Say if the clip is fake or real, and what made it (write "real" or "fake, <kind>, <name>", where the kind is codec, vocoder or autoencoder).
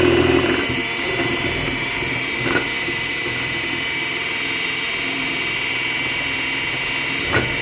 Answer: fake, vocoder, BigVGAN v2